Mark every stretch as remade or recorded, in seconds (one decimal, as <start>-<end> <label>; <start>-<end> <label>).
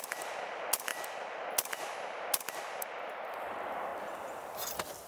0.0-5.1 recorded